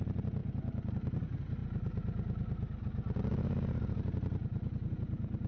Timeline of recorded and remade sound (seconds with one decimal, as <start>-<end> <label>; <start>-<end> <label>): 0.0-5.5 recorded